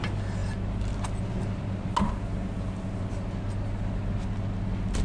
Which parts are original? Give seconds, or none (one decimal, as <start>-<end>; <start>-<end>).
0.0-5.0